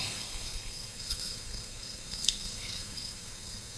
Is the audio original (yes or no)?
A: no